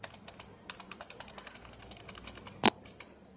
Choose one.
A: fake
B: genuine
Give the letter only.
B